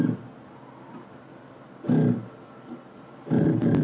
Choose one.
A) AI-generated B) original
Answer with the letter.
B